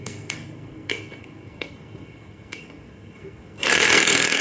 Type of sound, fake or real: fake